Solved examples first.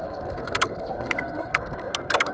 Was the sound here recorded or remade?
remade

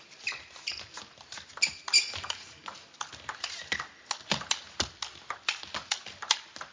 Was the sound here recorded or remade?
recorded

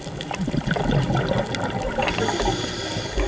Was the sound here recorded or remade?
recorded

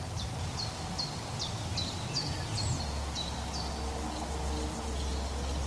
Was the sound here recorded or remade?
recorded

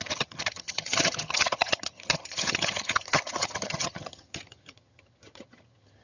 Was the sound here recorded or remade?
remade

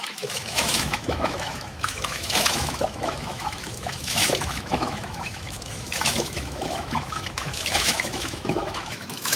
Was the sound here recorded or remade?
remade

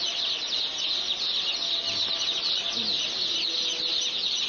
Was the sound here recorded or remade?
recorded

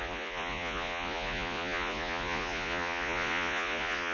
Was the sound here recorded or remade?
remade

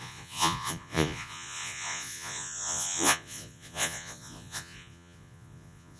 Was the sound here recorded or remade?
remade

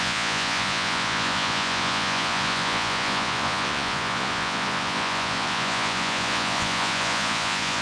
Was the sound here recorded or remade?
remade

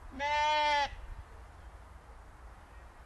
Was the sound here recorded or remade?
recorded